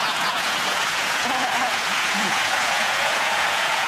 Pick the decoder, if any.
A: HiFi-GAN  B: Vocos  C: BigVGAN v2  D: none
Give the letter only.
B